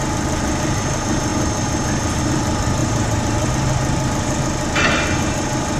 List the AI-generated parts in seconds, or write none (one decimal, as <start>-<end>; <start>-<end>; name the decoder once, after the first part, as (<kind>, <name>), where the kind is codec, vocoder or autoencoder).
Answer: 2.8-3.5 (vocoder, BigVGAN v2)

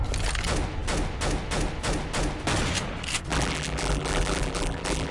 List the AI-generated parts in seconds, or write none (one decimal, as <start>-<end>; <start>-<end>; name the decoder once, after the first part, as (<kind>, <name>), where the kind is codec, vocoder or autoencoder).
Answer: 3.3-5.1 (vocoder, BigVGAN v2)